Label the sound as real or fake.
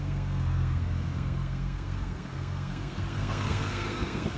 fake